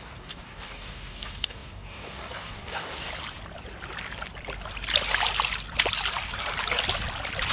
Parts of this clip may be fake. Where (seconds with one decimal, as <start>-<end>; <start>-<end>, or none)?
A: 0.0-3.1